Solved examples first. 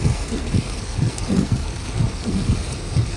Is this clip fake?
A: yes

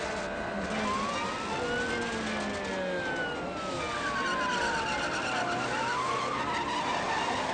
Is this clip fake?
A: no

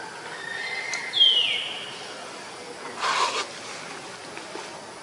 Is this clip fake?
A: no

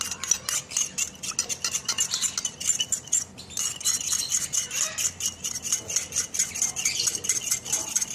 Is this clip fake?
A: no